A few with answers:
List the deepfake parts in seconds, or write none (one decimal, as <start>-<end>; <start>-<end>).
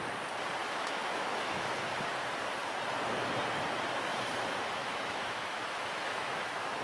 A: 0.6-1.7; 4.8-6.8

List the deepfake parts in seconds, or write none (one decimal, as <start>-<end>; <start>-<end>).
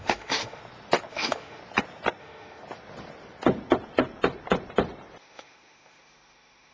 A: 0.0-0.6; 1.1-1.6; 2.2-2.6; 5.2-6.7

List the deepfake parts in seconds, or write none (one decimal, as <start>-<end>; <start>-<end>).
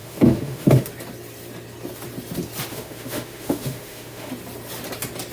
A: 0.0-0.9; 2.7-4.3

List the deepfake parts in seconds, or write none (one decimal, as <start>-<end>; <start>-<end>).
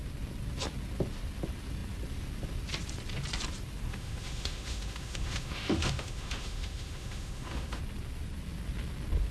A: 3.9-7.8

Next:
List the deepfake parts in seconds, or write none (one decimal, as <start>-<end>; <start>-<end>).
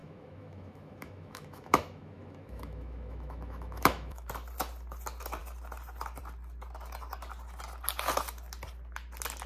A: 0.0-4.3